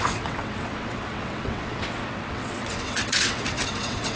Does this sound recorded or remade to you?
remade